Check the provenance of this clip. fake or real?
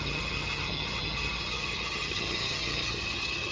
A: fake